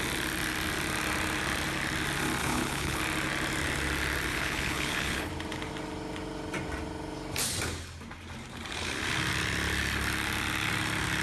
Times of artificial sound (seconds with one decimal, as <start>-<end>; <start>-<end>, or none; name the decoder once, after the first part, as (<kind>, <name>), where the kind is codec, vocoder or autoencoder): 2.4-3.0 (codec, HILCodec); 4.3-5.3